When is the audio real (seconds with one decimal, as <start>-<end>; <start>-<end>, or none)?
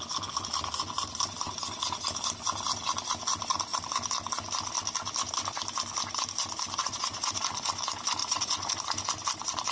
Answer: 0.0-6.8; 7.4-8.2; 8.7-9.7